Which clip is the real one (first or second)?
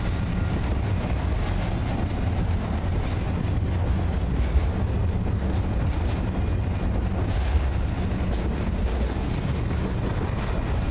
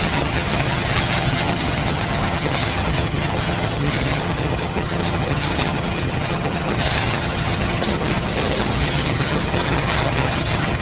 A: first